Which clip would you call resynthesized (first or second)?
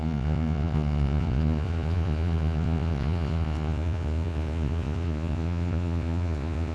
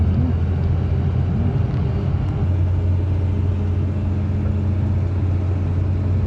first